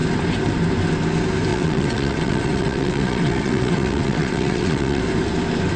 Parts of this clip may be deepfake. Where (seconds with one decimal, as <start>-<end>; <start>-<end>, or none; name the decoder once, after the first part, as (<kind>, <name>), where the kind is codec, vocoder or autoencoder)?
1.5-5.0 (vocoder, WaveNeXt)